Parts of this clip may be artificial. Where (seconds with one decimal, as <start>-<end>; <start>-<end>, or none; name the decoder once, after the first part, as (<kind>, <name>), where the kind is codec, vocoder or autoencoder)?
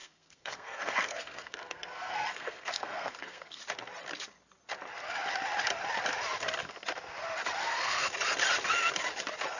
0.0-3.6 (codec, SNAC); 7.6-8.1